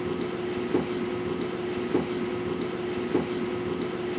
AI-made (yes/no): no